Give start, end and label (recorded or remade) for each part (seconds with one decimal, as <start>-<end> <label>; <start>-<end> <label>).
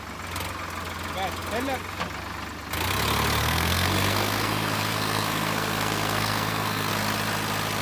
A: 0.0-3.4 recorded; 3.4-6.9 remade; 6.9-7.8 recorded